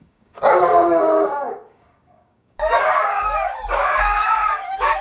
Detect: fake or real fake